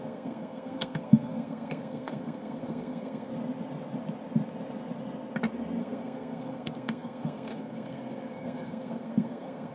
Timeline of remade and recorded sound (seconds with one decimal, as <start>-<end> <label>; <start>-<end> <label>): 0.0-3.3 remade; 3.3-5.8 recorded; 5.8-9.7 remade